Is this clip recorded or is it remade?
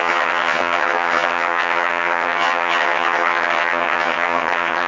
remade